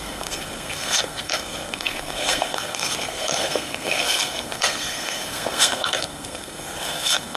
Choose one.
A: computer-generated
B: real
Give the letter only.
A